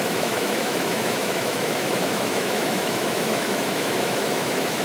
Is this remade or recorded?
remade